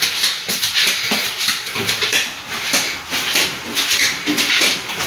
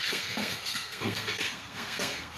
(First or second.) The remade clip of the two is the second